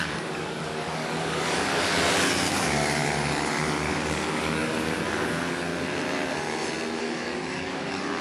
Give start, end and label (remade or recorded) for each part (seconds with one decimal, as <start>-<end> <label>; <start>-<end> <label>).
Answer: 0.0-1.7 remade; 1.7-2.5 recorded; 2.5-5.7 remade; 5.7-7.0 recorded; 7.0-8.2 remade